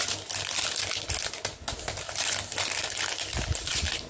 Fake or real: real